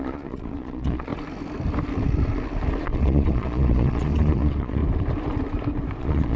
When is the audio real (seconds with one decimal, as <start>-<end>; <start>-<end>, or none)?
1.1-2.8; 4.8-6.0